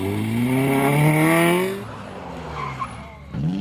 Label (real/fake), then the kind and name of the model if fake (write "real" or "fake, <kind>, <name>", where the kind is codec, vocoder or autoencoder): real